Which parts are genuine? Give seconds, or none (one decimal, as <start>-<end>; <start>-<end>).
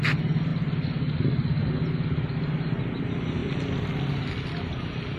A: 0.0-5.2